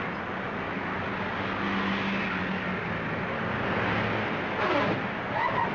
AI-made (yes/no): no